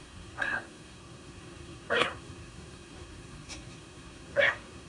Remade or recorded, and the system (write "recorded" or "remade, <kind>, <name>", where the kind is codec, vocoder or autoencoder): remade, codec, SNAC